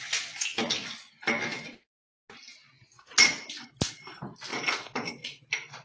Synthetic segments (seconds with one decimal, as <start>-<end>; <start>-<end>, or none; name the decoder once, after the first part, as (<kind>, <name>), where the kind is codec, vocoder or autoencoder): 4.5-5.1 (vocoder, Vocos)